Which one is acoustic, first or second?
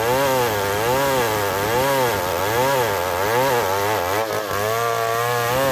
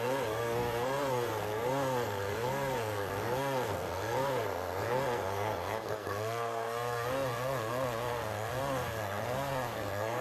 first